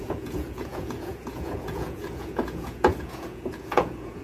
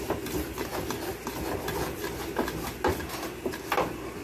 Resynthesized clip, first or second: first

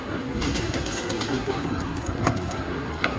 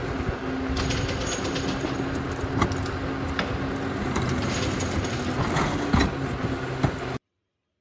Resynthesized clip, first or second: first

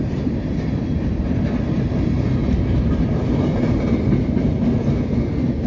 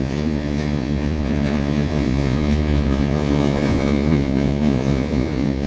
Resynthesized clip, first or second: second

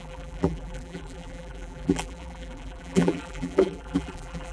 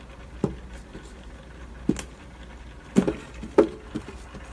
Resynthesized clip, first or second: first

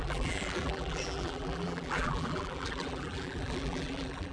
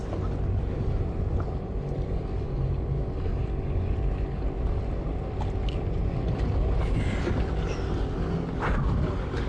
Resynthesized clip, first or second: first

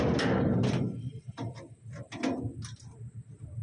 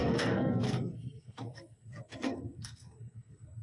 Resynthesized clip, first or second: second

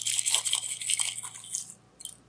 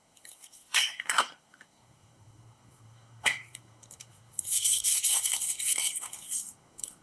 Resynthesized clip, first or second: second